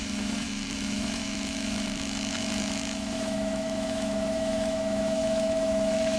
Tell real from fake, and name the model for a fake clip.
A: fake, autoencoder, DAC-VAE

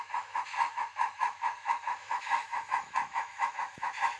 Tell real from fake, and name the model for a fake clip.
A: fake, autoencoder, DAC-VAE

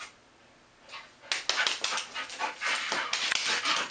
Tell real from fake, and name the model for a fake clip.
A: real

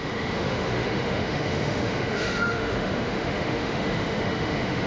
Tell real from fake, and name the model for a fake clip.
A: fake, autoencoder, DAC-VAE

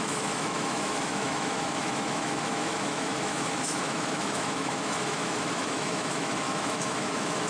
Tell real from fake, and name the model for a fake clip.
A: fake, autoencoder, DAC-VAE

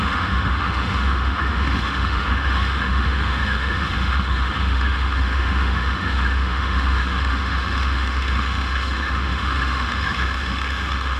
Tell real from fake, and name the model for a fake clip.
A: fake, autoencoder, DAC-VAE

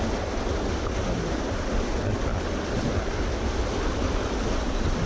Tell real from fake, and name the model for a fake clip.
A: real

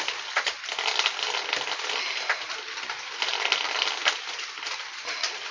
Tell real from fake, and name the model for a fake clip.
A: real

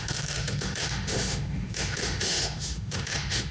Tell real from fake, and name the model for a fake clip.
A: fake, autoencoder, DAC-VAE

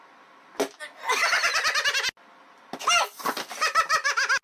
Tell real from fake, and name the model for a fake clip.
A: real